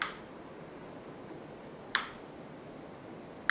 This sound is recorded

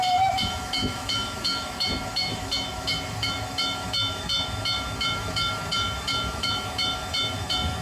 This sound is remade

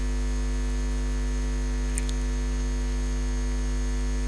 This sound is recorded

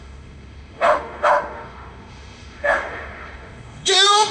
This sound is remade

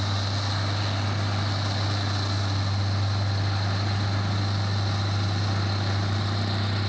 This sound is recorded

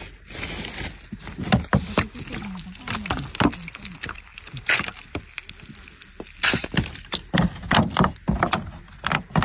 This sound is recorded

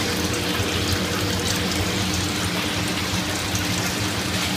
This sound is recorded